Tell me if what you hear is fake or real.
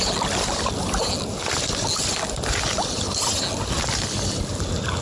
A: real